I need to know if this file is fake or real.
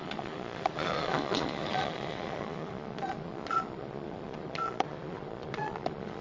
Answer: fake